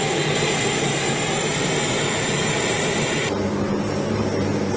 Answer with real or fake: real